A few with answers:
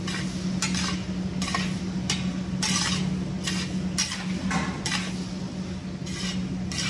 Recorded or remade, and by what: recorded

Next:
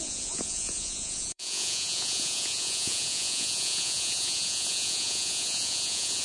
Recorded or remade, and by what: remade, vocoder, Vocos